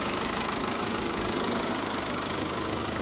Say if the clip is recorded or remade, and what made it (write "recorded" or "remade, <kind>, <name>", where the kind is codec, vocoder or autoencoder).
remade, codec, DAC